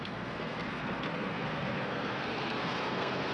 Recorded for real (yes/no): no